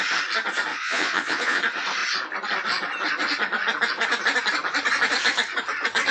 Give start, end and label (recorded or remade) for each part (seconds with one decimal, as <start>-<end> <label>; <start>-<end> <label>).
0.0-0.7 recorded; 0.7-1.6 remade; 1.6-6.1 recorded